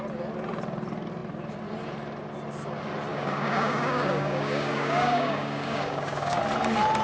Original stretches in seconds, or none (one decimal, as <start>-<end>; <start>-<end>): 0.0-3.1; 6.4-7.0

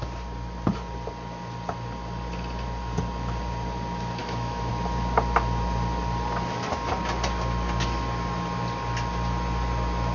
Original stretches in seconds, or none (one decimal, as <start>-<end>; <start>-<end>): 0.0-4.2; 4.7-10.1

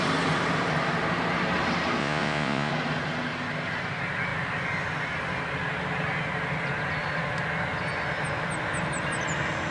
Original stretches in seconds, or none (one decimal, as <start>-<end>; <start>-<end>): 0.0-2.0; 2.7-9.7

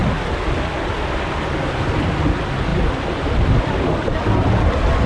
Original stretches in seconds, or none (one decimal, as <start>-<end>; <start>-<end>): 0.0-2.7

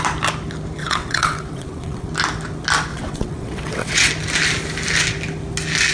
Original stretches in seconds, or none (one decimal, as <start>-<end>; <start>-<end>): 0.0-0.8; 2.1-2.9; 4.1-5.9

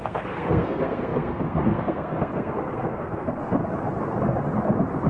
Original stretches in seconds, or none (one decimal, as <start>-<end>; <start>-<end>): 3.6-5.1